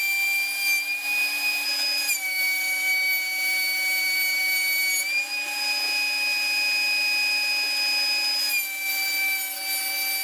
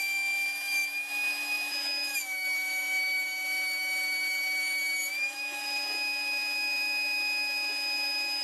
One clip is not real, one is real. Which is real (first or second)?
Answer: first